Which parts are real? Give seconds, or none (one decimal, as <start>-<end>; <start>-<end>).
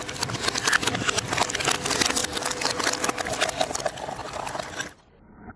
0.0-2.2; 3.0-4.2; 4.7-5.6